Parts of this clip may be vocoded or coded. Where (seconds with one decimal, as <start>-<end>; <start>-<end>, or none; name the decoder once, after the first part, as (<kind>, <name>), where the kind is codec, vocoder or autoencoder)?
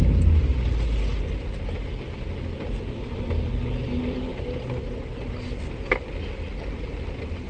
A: none